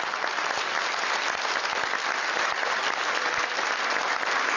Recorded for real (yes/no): yes